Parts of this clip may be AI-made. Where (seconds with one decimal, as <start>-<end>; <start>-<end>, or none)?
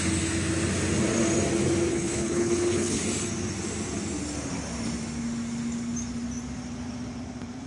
1.9-3.0